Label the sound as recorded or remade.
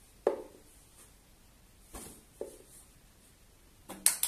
recorded